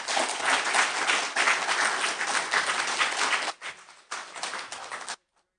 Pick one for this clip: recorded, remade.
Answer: recorded